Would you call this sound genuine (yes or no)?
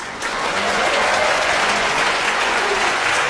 no